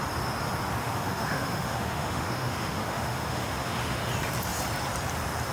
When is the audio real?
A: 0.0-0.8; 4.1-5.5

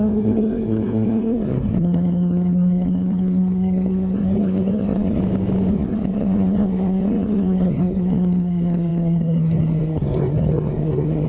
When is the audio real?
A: 5.2-5.7

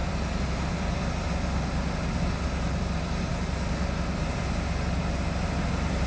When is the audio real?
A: 0.0-6.1

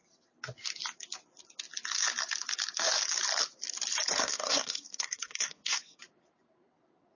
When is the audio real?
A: 0.0-4.2; 6.0-7.2